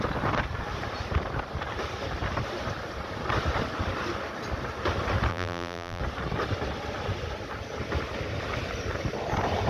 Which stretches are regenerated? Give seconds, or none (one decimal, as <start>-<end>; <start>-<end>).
5.3-6.0